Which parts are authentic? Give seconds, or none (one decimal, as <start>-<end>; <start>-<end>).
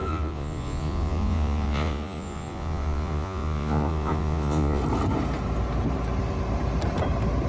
4.8-7.5